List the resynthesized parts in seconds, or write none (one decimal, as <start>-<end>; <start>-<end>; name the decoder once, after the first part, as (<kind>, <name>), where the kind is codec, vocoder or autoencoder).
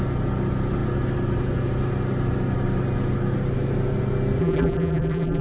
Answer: 4.4-5.4 (vocoder, BigVGAN v2)